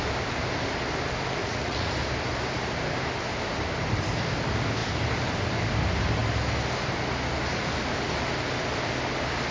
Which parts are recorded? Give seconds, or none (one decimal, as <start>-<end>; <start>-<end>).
0.0-1.4; 1.9-9.5